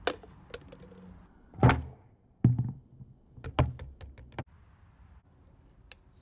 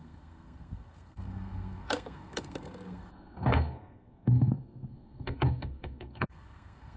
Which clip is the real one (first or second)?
first